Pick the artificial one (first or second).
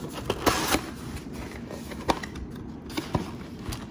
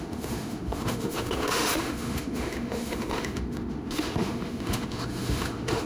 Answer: second